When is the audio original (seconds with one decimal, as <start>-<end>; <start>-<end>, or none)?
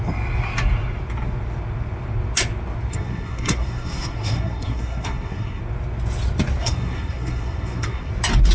0.0-2.9; 5.6-6.6; 8.1-8.5